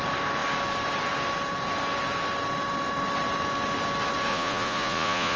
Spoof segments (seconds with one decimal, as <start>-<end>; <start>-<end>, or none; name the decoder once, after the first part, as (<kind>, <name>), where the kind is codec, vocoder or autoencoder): 4.3-5.4 (vocoder, Vocos)